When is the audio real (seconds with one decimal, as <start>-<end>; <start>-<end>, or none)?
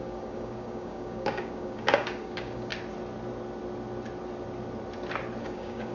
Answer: 2.7-5.4